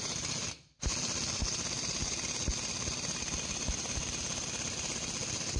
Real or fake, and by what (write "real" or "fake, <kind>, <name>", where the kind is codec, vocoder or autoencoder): real